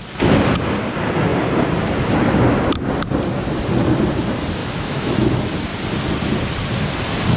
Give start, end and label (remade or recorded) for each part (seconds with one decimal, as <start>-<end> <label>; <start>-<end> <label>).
0.0-4.6 recorded; 4.6-5.3 remade; 5.3-7.4 recorded